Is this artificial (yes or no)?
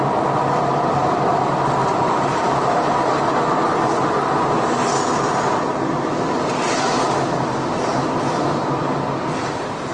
no